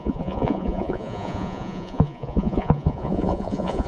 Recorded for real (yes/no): no